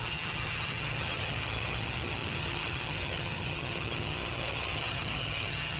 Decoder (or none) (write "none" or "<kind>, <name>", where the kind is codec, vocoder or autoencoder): vocoder, HiFi-GAN